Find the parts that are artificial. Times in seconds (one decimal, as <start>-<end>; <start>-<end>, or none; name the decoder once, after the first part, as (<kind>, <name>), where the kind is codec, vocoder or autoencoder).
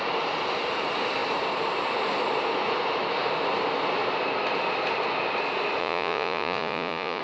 5.8-7.2 (vocoder, Vocos)